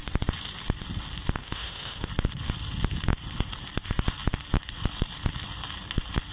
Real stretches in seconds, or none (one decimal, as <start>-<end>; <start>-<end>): 0.0-1.4; 2.1-6.3